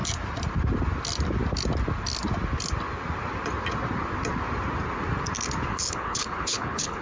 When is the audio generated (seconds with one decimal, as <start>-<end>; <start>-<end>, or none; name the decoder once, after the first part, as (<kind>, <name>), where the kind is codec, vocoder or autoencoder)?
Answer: 5.7-7.0 (codec, HILCodec)